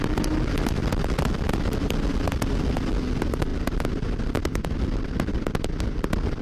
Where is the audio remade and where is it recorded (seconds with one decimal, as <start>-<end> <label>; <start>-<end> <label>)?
0.0-6.4 recorded